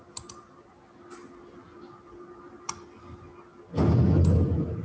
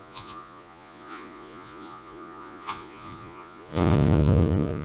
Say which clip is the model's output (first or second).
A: second